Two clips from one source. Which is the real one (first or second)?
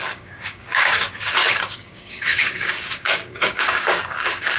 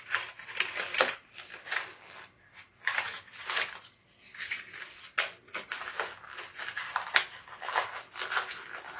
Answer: second